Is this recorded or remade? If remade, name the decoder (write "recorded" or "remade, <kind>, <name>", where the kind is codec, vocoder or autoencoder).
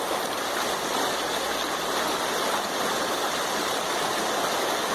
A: recorded